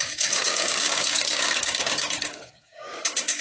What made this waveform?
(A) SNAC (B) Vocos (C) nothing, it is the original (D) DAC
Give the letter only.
D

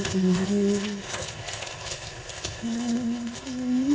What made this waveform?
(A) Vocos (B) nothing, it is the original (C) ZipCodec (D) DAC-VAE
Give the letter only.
C